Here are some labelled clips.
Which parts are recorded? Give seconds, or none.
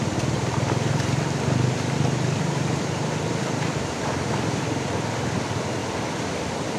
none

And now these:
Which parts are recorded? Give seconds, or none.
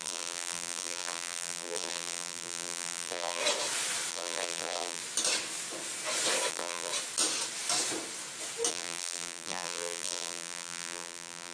3.4-4.1; 5.0-6.5; 6.9-8.7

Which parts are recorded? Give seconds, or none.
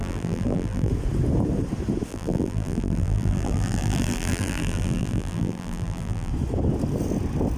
0.9-2.1; 6.3-7.6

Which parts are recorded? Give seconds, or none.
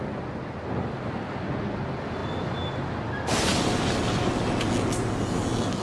0.0-5.8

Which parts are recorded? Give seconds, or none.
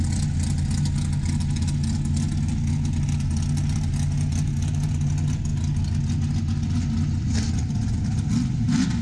0.0-9.0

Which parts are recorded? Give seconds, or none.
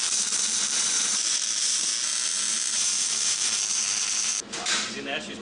1.9-2.5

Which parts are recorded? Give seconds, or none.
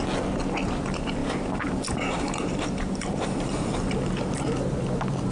0.0-1.2; 4.4-5.3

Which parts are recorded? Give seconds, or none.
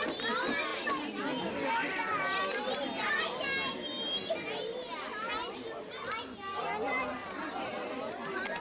0.0-7.2; 8.1-8.6